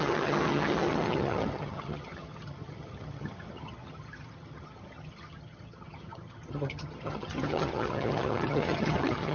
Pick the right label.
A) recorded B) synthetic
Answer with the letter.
B